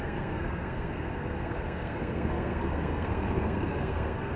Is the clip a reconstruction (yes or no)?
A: yes